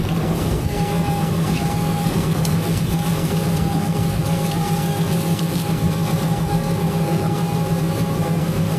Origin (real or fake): fake